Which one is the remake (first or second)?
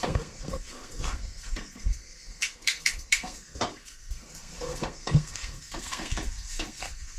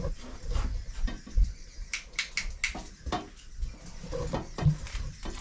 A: first